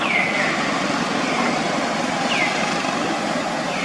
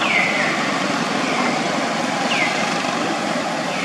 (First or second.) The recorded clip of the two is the first